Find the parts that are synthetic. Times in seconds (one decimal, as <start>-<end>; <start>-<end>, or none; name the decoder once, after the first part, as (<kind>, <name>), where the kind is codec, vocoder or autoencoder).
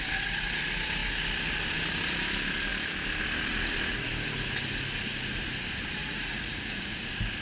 6.0-6.9 (vocoder, Vocos)